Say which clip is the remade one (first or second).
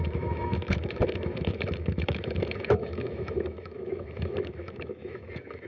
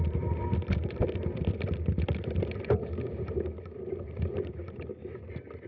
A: first